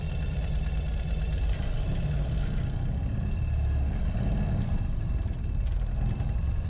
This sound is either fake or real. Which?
fake